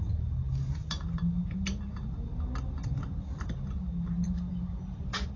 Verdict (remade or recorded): recorded